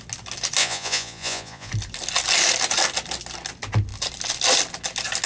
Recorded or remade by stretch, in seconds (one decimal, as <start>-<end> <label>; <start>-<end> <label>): 0.0-0.6 recorded; 0.6-1.7 remade; 1.7-5.3 recorded